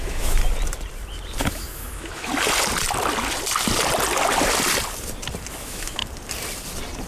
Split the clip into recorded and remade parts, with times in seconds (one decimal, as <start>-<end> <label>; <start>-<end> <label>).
0.0-0.4 remade; 0.4-1.4 recorded; 1.4-2.3 remade; 2.3-5.6 recorded; 5.6-6.0 remade; 6.0-7.1 recorded